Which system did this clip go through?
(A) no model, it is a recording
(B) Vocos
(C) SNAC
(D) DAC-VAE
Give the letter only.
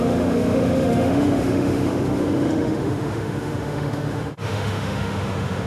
D